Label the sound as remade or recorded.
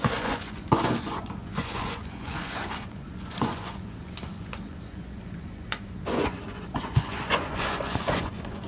remade